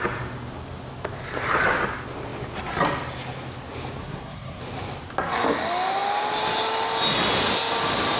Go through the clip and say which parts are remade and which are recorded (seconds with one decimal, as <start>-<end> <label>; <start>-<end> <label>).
0.0-4.0 recorded; 4.0-4.6 remade; 4.6-8.2 recorded